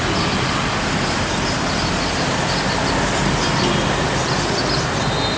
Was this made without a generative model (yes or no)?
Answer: yes